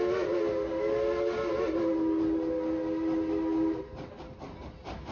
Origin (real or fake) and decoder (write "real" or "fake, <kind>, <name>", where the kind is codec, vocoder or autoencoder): real